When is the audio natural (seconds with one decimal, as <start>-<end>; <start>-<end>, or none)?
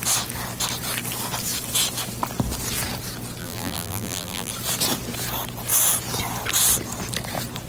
0.0-3.4; 4.5-7.7